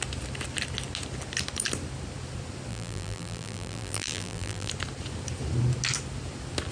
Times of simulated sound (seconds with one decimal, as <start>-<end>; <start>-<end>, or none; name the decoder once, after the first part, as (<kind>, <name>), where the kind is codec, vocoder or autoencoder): 2.7-4.7 (vocoder, BigVGAN v2)